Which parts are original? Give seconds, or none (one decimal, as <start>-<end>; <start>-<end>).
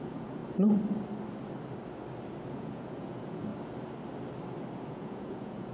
0.4-2.5; 3.5-4.9